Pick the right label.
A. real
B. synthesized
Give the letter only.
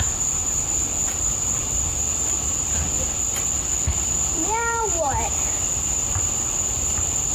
B